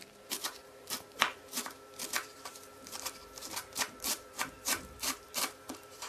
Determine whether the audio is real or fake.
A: fake